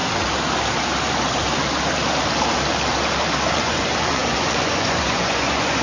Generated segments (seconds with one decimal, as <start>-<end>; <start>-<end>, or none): 3.5-5.8